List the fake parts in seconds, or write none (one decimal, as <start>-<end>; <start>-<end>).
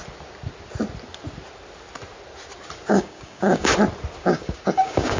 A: 2.9-3.7; 4.2-5.2